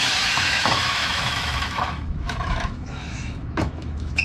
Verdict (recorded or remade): remade